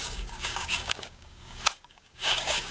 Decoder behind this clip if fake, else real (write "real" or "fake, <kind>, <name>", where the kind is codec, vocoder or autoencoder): fake, codec, DAC